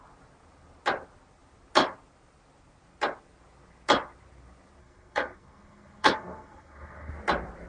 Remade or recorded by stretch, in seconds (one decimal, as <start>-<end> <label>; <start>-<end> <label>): 0.0-4.8 recorded; 4.8-7.1 remade; 7.1-7.7 recorded